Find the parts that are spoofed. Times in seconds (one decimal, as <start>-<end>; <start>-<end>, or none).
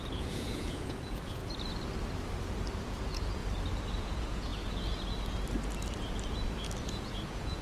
0.0-1.4; 2.8-3.4; 4.0-4.5; 6.8-7.6